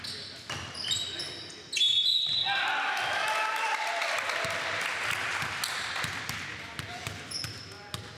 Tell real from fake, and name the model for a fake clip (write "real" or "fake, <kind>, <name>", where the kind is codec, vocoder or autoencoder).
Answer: real